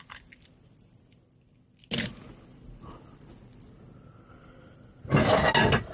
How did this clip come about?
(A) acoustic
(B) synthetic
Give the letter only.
A